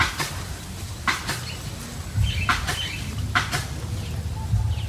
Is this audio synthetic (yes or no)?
no